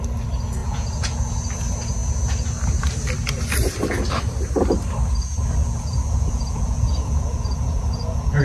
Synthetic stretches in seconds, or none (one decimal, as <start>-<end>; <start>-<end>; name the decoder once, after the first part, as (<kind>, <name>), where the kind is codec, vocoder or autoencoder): 0.6-1.3 (vocoder, Vocos); 5.6-8.4